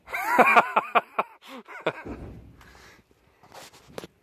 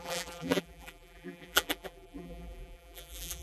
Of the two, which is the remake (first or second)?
second